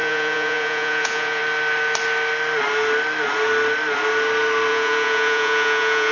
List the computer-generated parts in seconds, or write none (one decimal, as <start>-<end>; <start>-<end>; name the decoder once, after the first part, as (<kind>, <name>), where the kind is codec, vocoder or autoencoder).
0.0-1.4 (vocoder, Vocos); 4.7-6.1